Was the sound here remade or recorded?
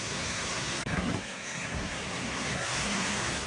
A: remade